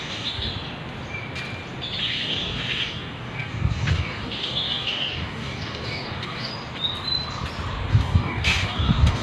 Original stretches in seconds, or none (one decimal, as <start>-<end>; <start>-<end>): 0.5-2.0; 6.5-7.9

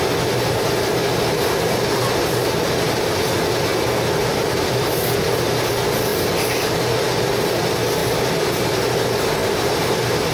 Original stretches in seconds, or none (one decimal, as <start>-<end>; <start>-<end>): 0.0-3.7; 5.0-8.0; 8.7-10.3

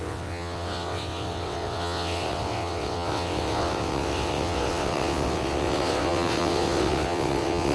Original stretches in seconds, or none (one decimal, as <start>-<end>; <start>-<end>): none

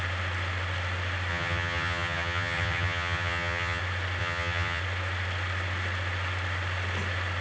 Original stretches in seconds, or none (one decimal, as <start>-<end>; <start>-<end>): 0.0-1.3; 3.8-4.2; 4.8-7.4

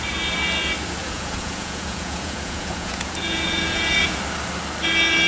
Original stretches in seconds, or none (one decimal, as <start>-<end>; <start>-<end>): 0.0-1.0; 4.2-5.3